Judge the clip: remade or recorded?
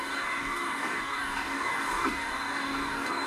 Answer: remade